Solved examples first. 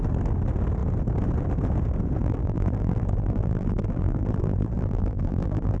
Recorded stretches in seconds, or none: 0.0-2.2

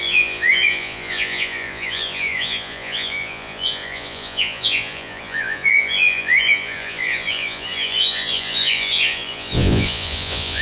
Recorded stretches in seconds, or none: none

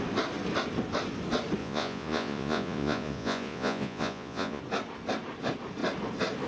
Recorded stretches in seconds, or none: 0.0-1.6; 4.6-6.5

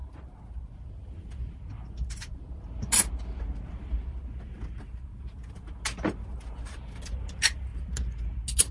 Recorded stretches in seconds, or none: 0.0-8.7

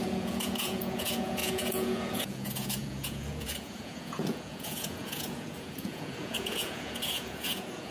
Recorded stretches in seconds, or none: none

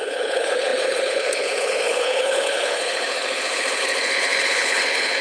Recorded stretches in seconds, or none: none

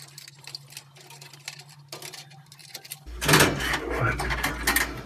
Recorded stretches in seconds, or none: 0.0-5.1

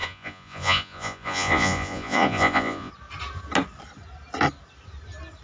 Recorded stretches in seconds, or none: 2.9-5.4